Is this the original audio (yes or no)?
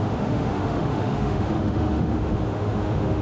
no